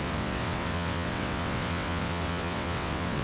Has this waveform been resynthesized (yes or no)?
yes